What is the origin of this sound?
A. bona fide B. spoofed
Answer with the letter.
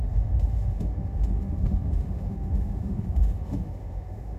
B